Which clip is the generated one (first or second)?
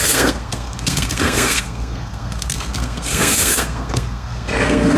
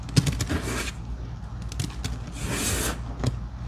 first